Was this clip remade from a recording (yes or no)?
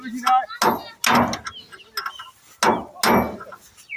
no